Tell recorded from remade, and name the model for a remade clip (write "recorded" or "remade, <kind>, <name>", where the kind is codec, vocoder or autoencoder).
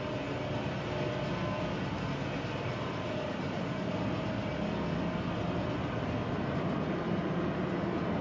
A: recorded